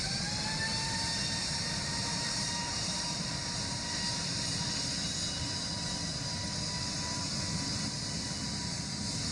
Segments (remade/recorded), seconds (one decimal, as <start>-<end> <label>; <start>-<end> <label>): 0.0-0.7 recorded; 0.7-3.3 remade; 3.3-9.3 recorded